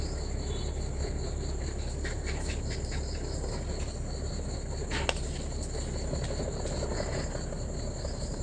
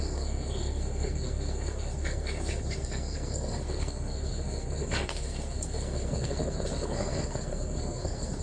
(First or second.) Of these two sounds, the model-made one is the second